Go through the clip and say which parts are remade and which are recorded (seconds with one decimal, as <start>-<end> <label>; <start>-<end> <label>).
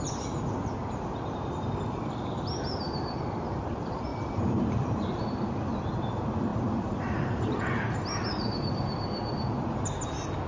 0.0-4.1 recorded; 4.1-5.8 remade; 5.8-6.5 recorded; 6.5-7.6 remade; 7.6-10.5 recorded